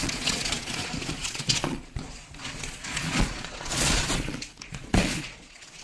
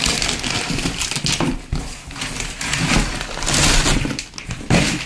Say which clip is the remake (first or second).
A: first